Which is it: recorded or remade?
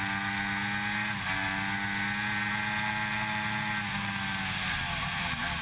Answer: recorded